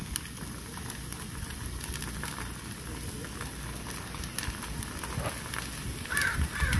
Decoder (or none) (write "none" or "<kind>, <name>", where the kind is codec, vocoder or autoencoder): none